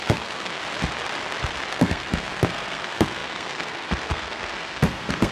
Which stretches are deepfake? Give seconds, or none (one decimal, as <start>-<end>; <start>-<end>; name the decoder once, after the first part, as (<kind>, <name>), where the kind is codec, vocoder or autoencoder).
0.0-0.6 (codec, SNAC); 1.7-5.3